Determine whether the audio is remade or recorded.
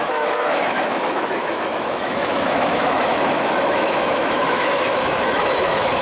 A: remade